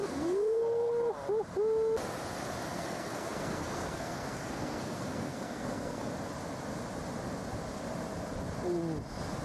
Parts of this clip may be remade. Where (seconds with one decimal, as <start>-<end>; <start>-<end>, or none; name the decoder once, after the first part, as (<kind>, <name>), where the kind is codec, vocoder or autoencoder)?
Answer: 0.0-0.9 (codec, SNAC); 2.7-6.1